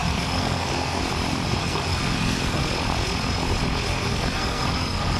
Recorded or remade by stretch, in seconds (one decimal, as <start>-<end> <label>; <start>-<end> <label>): 0.0-1.0 remade; 1.0-1.6 recorded; 1.6-2.6 remade; 2.6-3.9 recorded; 3.9-5.2 remade